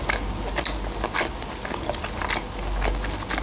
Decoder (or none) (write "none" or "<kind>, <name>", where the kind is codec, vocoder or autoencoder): none